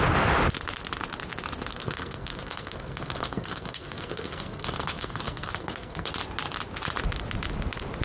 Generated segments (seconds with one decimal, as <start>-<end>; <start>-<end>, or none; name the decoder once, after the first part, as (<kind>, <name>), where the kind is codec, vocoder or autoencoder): 1.7-6.1 (codec, SNAC)